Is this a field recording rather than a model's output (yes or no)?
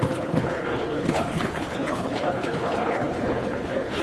no